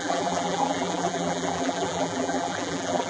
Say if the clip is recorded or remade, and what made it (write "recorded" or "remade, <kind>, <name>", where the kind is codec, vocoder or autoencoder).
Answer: remade, vocoder, BigVGAN v2